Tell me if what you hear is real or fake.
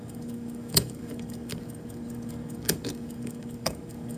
fake